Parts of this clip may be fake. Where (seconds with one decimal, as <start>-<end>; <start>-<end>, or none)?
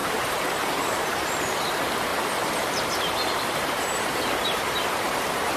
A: 0.0-1.3; 2.1-5.6